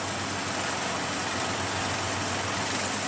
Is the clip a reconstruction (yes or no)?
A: no